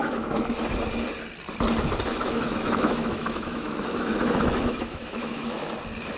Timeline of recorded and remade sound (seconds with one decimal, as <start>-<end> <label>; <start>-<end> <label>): 0.0-0.6 remade; 0.6-2.1 recorded; 2.1-5.8 remade; 5.8-6.2 recorded